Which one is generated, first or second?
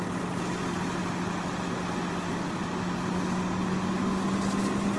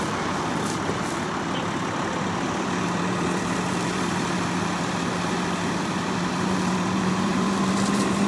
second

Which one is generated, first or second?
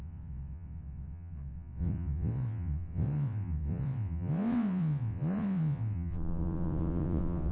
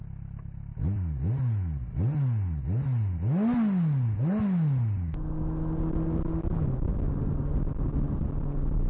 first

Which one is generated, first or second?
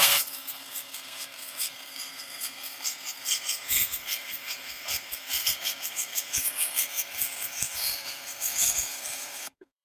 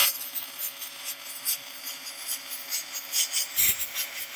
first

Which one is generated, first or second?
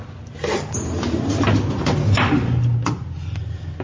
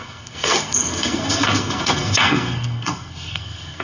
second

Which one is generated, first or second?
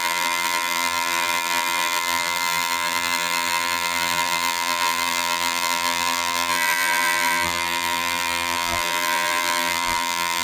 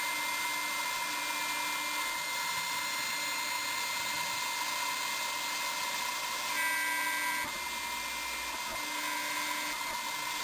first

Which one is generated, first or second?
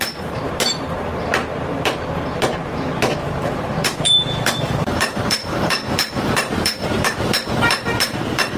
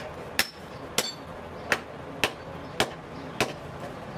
first